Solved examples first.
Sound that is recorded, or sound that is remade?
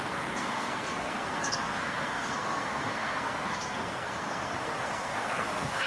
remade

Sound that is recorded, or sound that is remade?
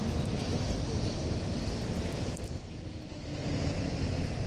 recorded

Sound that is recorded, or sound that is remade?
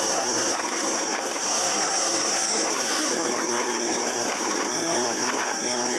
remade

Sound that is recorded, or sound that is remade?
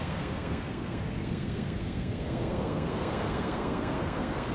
remade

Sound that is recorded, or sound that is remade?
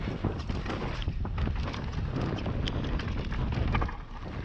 recorded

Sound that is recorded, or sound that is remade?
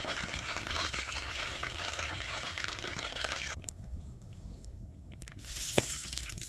remade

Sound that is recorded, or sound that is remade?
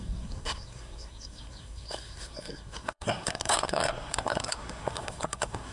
remade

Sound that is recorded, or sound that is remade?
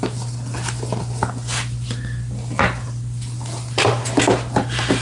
recorded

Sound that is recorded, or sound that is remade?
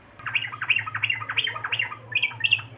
recorded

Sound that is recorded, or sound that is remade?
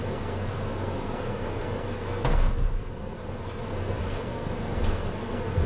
remade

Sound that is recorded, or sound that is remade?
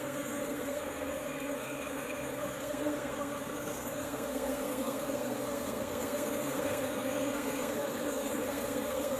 remade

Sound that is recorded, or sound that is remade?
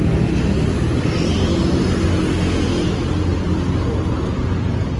recorded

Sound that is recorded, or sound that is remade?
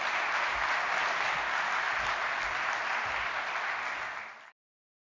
recorded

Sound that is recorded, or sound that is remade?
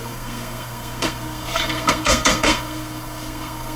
remade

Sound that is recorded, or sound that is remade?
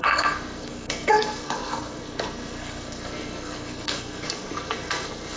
remade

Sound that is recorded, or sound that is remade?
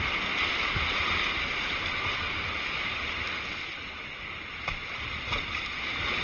recorded